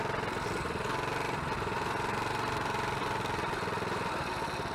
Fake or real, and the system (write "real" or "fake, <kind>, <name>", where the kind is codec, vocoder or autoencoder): real